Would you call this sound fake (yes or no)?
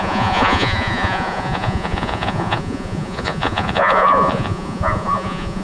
yes